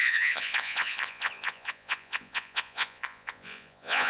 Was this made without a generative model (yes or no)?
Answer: no